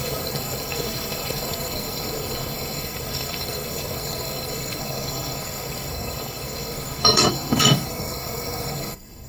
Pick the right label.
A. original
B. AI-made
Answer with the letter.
B